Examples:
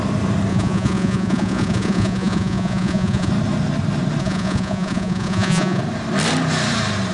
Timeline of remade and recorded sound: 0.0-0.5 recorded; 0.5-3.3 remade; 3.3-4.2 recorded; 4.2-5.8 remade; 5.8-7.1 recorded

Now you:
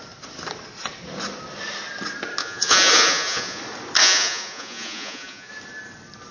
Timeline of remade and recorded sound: 0.0-2.4 recorded; 2.4-3.6 remade; 3.6-4.0 recorded; 4.0-5.5 remade; 5.5-6.3 recorded

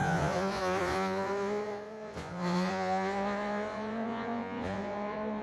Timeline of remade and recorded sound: 0.0-5.4 remade